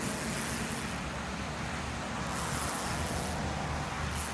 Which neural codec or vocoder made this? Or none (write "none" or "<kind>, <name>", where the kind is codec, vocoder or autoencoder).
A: none